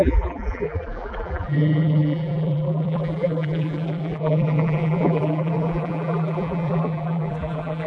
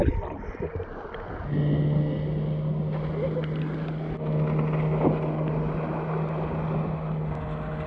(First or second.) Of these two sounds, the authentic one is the second